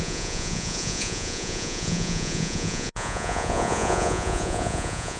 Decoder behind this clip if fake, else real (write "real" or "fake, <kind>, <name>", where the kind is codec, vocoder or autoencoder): fake, vocoder, Vocos